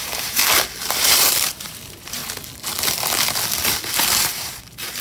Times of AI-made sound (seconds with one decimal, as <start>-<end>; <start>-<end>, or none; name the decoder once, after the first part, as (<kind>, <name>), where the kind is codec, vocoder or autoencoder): 0.0-0.4 (vocoder, BigVGAN v2); 0.9-2.2; 3.9-5.0

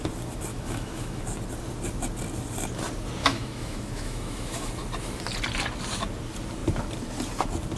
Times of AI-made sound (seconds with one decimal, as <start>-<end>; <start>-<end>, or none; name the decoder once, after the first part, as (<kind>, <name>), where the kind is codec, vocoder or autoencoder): 0.5-1.2 (autoencoder, DAC-VAE); 3.2-4.7

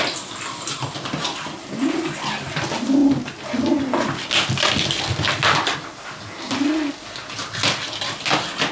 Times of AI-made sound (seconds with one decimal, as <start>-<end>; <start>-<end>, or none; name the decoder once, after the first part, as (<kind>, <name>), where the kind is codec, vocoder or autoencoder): none

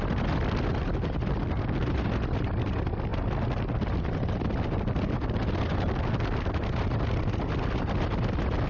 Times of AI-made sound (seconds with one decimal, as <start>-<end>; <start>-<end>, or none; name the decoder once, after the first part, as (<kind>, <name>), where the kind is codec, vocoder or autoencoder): none